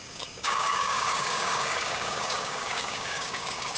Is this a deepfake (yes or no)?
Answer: yes